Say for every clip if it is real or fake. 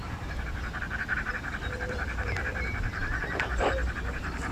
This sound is real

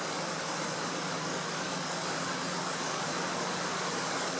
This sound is fake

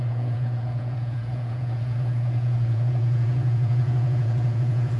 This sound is fake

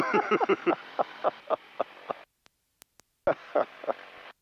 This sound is real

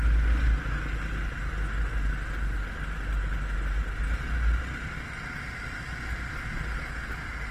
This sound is real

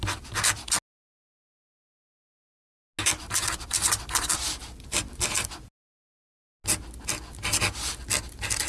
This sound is real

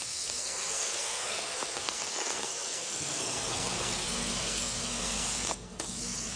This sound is fake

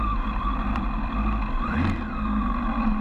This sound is fake